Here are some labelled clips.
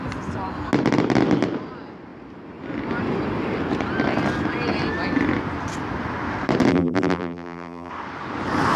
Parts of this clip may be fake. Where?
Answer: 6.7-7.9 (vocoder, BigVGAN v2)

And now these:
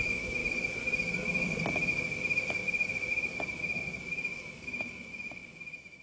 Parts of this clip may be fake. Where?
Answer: 0.0-0.4 (autoencoder, DAC-VAE); 4.0-6.0